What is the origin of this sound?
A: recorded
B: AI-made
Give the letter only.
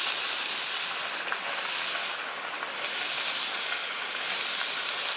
A